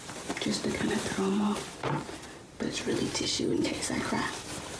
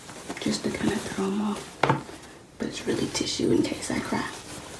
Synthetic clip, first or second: first